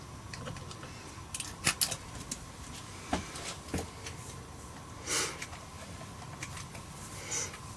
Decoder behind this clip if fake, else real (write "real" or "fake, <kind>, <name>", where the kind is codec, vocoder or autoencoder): real